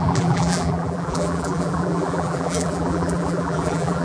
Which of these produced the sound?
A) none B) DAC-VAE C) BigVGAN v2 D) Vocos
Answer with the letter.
C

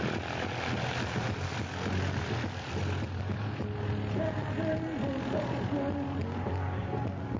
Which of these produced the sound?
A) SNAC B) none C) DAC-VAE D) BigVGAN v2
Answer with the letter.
B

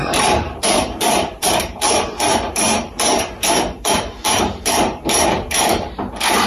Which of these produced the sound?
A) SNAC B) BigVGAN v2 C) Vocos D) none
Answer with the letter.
B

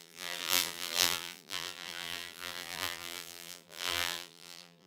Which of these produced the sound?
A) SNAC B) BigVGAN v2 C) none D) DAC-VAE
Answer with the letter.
B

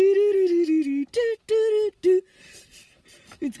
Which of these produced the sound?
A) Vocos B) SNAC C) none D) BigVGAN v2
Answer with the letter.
C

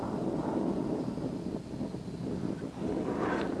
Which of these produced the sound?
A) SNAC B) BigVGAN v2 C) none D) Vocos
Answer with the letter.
C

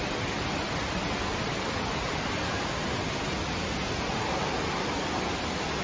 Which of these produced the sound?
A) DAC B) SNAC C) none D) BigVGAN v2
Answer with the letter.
D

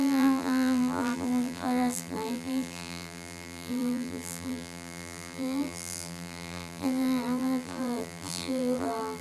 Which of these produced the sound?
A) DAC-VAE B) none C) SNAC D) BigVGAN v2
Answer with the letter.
D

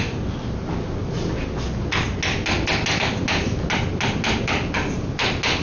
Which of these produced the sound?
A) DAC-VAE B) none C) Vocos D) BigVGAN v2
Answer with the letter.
B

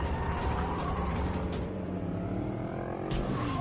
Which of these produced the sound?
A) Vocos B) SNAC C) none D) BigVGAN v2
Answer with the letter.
D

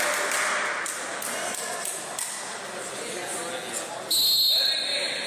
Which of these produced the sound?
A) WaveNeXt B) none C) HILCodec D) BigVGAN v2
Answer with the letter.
B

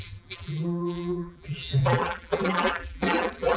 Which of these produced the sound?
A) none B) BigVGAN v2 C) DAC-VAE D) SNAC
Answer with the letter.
B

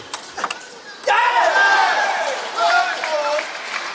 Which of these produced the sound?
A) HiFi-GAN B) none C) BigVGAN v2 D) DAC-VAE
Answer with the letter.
C